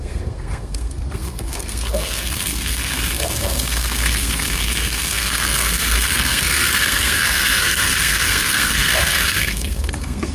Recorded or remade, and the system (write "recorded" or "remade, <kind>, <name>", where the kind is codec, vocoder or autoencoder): remade, codec, SNAC